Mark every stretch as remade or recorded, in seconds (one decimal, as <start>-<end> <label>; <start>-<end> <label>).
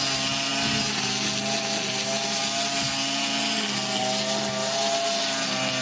0.0-5.8 recorded